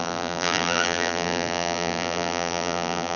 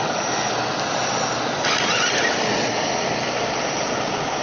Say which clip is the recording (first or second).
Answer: second